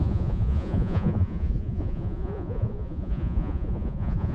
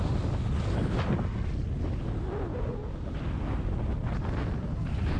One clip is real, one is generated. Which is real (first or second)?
second